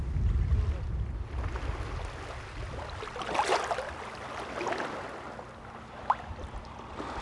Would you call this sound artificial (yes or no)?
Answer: no